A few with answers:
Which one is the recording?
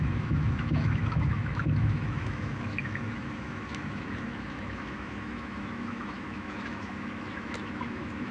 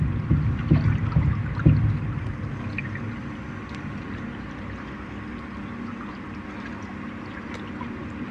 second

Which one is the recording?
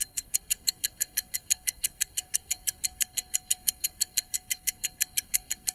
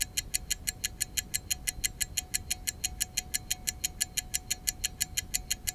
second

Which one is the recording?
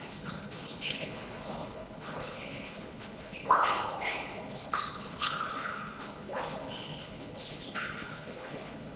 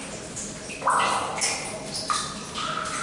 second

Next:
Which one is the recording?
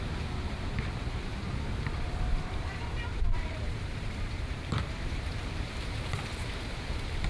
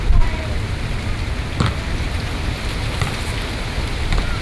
second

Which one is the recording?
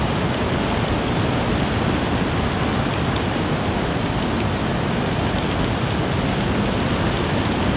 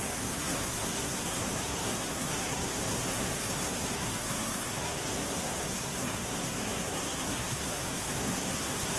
first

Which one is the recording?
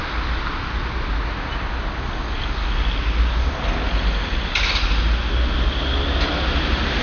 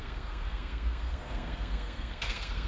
first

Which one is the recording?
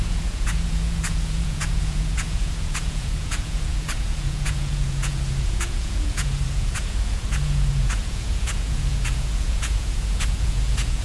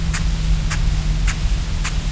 second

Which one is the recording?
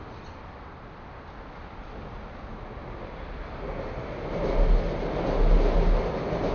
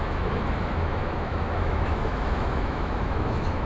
first